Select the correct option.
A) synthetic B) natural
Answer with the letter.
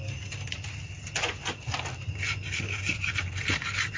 B